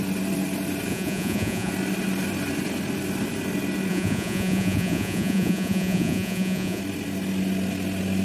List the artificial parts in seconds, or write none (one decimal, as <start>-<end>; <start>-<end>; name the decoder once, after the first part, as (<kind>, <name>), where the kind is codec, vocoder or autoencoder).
0.9-1.7 (vocoder, Vocos); 3.9-6.8